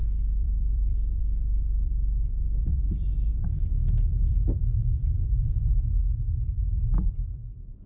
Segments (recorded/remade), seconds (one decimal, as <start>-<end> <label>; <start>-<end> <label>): 0.0-5.7 remade; 5.7-6.8 recorded; 6.8-7.4 remade; 7.4-7.9 recorded